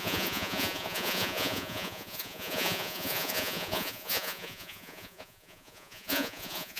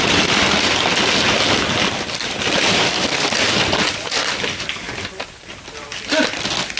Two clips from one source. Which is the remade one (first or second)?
first